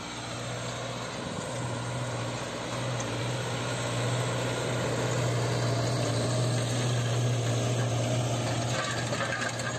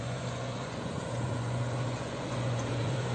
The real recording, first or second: first